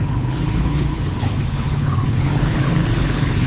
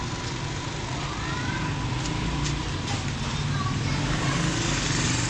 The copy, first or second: first